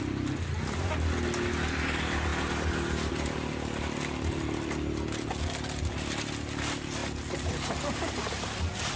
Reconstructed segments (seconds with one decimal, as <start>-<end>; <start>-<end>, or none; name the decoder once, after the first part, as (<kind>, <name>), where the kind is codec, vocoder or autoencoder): none